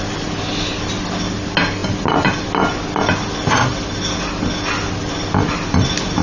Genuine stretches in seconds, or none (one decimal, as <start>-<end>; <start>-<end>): 0.0-6.2